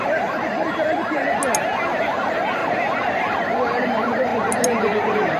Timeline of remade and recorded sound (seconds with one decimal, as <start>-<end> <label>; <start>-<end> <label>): 0.0-1.2 remade; 1.2-2.0 recorded; 2.0-2.6 remade; 2.6-3.2 recorded; 3.2-4.3 remade; 4.3-5.0 recorded; 5.0-5.4 remade